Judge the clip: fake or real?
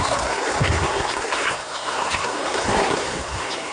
fake